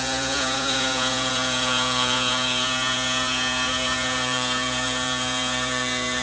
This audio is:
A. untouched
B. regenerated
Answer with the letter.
B